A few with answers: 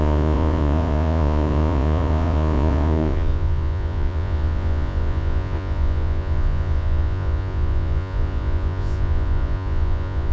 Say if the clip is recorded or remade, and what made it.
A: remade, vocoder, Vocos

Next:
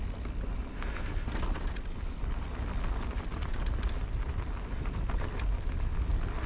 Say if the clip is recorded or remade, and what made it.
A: recorded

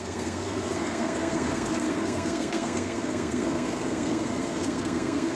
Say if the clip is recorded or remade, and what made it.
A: remade, codec, SNAC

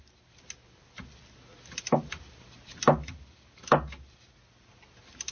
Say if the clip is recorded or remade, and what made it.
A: recorded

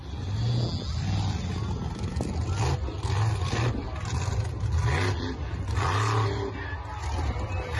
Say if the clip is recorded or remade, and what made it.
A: recorded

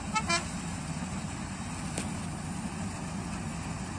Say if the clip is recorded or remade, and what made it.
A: recorded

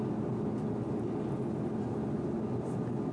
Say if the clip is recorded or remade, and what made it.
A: recorded